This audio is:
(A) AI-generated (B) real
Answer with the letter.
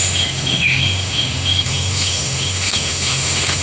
A